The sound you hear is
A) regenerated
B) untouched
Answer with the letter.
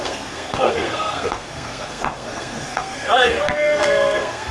A